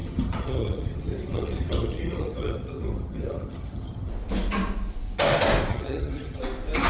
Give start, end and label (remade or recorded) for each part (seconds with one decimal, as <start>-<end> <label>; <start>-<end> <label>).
0.0-4.1 remade; 4.1-5.7 recorded; 5.7-6.4 remade; 6.4-6.9 recorded